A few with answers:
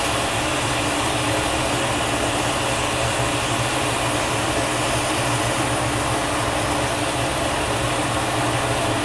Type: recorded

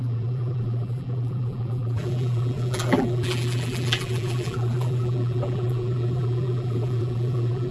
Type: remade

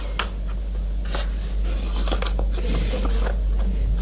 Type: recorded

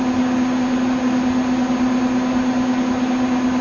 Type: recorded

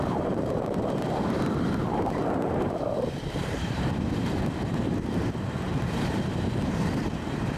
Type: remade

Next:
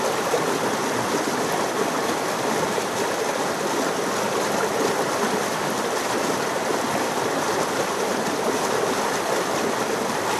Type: recorded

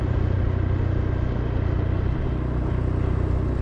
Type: recorded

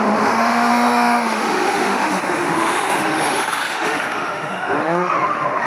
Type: remade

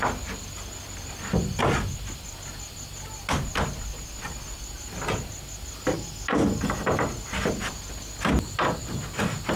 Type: recorded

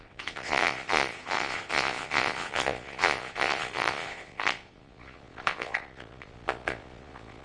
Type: remade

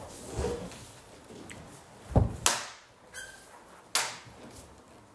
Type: recorded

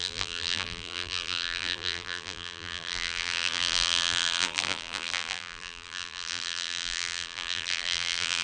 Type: remade